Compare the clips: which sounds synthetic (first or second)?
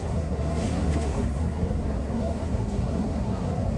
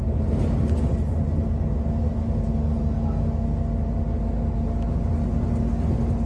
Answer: first